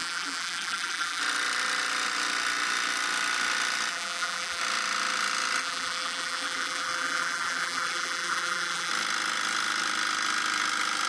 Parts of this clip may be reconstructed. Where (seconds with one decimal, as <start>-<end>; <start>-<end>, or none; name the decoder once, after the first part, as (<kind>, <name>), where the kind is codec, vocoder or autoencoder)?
0.0-1.2 (vocoder, BigVGAN v2); 3.9-4.6; 5.6-8.9